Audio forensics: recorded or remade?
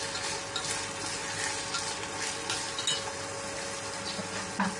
recorded